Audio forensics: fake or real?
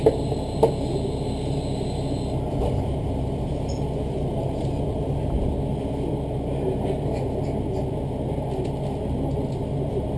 real